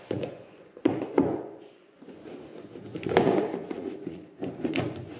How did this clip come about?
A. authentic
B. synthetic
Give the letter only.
B